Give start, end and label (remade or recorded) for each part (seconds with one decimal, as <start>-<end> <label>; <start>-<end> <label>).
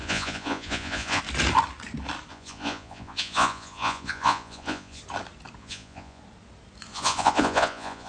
0.0-1.2 remade; 1.2-2.3 recorded; 2.3-5.0 remade; 5.0-5.6 recorded; 5.6-6.2 remade; 6.2-6.9 recorded; 6.9-8.1 remade